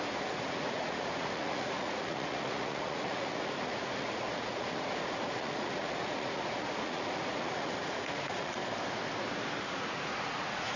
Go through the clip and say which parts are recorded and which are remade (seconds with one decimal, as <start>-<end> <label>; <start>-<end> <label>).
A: 0.0-8.6 remade; 8.6-9.6 recorded; 9.6-10.8 remade